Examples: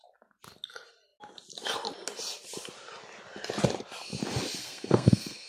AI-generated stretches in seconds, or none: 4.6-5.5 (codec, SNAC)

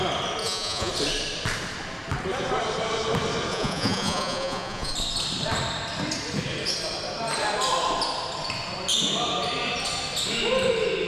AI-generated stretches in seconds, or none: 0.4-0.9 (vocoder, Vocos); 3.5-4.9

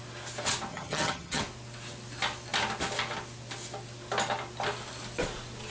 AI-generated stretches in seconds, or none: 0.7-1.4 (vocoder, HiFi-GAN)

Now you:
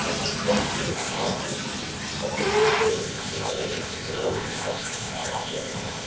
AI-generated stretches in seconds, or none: 0.9-1.4 (codec, ZipCodec); 2.9-6.1

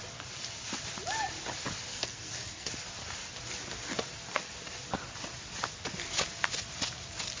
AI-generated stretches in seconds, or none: 1.9-2.7 (codec, SNAC)